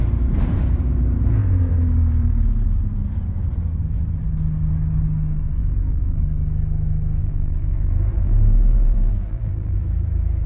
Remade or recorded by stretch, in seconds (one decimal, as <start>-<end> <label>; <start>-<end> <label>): 0.0-5.6 recorded; 5.6-6.2 remade; 6.2-7.2 recorded; 7.2-9.8 remade; 9.8-10.5 recorded